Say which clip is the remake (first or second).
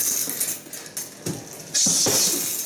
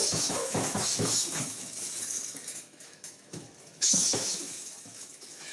second